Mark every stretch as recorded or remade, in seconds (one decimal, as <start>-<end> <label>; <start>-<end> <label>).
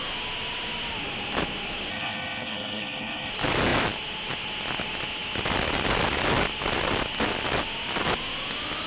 0.0-1.9 recorded; 1.9-3.3 remade; 3.3-8.9 recorded